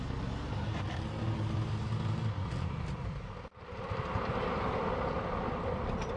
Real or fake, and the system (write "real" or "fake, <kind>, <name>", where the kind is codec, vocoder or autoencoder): real